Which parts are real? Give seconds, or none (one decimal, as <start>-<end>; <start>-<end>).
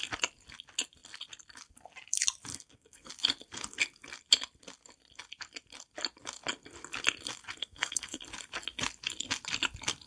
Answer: 0.0-2.5; 3.1-7.6; 8.2-10.1